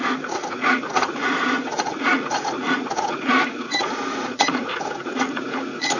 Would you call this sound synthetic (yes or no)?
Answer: yes